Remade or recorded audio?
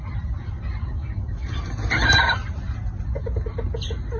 recorded